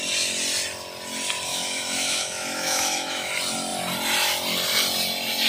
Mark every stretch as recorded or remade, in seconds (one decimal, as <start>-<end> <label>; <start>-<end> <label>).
0.0-1.5 recorded; 1.5-3.3 remade; 3.3-5.5 recorded

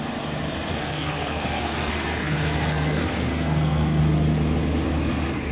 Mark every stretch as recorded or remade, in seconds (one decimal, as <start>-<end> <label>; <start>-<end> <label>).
0.0-0.7 recorded; 0.7-4.0 remade; 4.0-5.5 recorded

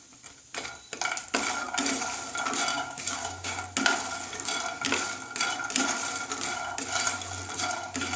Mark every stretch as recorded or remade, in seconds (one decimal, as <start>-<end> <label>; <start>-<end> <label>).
0.0-2.7 recorded; 2.7-3.6 remade; 3.6-8.2 recorded

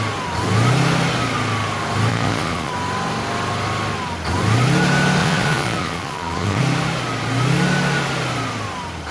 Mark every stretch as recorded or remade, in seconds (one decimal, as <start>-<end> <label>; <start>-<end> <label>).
0.0-2.1 recorded; 2.1-2.7 remade; 2.7-5.2 recorded; 5.2-6.6 remade; 6.6-9.1 recorded

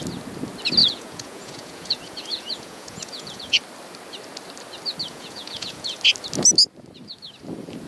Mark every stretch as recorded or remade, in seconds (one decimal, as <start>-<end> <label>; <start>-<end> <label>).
0.0-0.8 recorded; 0.8-3.6 remade; 3.6-5.0 recorded; 5.0-6.0 remade; 6.0-7.9 recorded

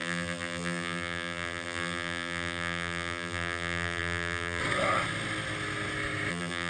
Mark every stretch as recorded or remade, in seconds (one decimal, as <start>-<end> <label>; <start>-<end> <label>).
0.0-4.6 remade; 4.6-6.3 recorded; 6.3-6.7 remade

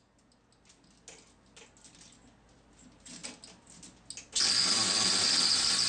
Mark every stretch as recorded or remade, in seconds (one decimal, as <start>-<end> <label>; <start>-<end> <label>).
0.0-5.9 recorded

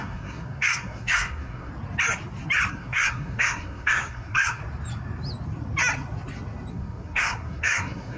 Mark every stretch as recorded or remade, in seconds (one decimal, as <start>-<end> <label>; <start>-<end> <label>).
0.0-1.7 remade; 1.7-2.7 recorded; 2.7-4.6 remade; 4.6-6.7 recorded; 6.7-8.2 remade